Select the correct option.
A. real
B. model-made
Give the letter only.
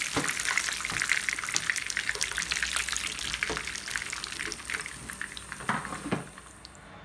A